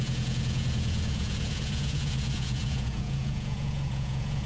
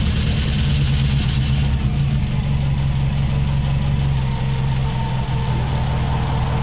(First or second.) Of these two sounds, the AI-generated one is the first